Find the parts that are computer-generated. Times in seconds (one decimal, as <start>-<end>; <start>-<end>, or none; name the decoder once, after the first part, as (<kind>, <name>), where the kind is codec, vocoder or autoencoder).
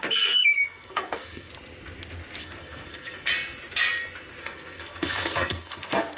0.0-1.5 (codec, SNAC); 2.4-3.3; 4.4-6.2